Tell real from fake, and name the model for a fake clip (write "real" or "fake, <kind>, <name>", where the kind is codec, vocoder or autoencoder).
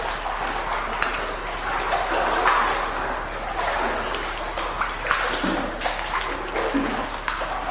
real